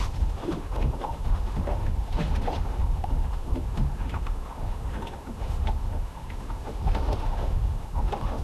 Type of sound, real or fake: fake